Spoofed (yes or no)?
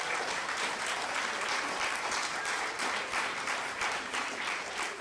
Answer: yes